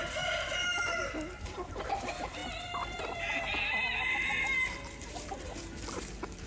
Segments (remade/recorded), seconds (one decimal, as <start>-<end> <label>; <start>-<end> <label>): 0.0-2.4 remade; 2.4-3.0 recorded; 3.0-6.5 remade